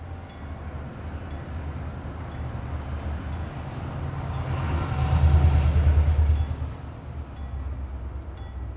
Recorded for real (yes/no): yes